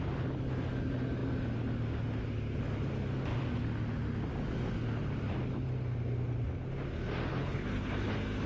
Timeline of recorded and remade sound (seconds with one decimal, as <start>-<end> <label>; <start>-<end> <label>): 0.0-7.3 recorded; 7.3-7.9 remade; 7.9-8.5 recorded